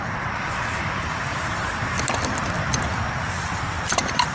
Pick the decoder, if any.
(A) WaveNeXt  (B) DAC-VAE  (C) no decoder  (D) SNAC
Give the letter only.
C